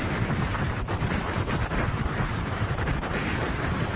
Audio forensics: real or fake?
fake